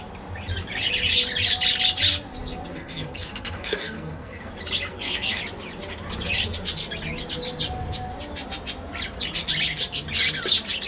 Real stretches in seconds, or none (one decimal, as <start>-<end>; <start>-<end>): 0.0-2.7; 4.5-4.9; 5.4-10.9